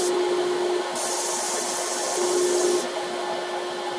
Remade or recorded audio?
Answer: recorded